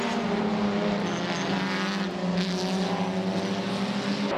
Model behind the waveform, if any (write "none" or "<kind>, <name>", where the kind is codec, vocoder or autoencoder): none